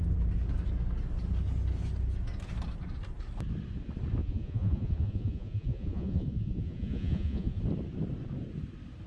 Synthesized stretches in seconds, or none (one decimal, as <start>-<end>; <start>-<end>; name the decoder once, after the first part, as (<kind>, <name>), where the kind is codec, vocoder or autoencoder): 4.2-7.6 (vocoder, Vocos)